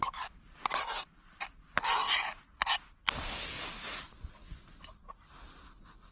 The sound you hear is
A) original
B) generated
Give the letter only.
A